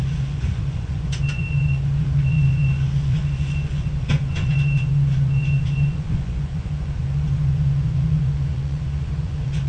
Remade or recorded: remade